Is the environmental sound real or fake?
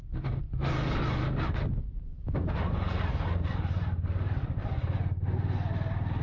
real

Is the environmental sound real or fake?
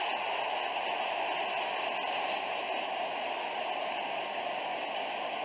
real